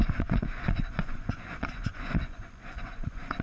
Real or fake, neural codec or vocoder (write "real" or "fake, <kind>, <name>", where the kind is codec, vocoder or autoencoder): fake, vocoder, Vocos